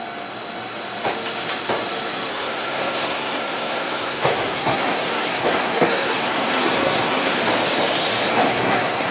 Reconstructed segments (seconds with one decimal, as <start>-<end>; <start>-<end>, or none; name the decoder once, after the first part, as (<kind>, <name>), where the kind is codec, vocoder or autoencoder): 2.3-7.4 (codec, SNAC); 8.4-9.1